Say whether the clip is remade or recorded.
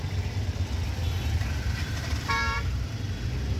remade